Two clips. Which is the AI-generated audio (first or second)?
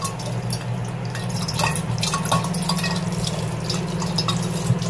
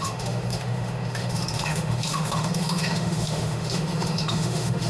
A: second